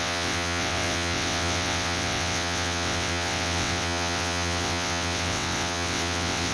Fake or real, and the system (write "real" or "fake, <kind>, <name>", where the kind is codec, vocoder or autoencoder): fake, vocoder, WaveNeXt